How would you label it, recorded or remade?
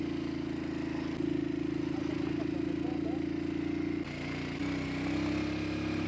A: recorded